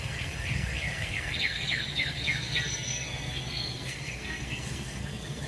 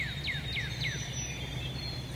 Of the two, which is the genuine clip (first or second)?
second